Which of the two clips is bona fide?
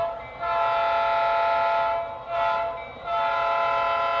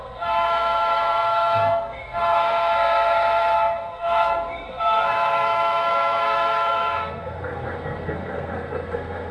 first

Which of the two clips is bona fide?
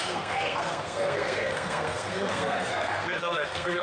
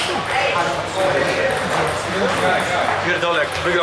second